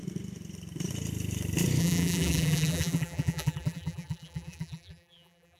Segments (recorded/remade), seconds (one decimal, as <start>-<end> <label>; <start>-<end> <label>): 0.0-1.8 recorded; 1.8-5.6 remade